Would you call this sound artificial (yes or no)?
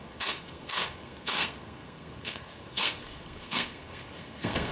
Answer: yes